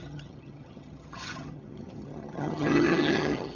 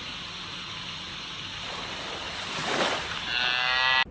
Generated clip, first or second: first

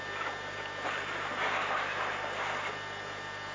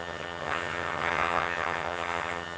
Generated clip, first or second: second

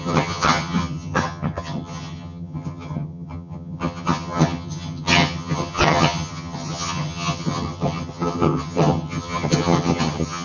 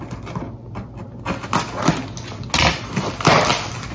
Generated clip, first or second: first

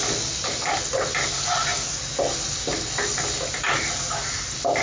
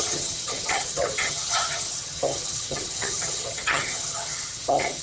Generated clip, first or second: second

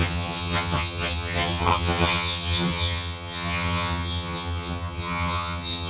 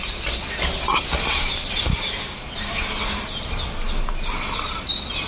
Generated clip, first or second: first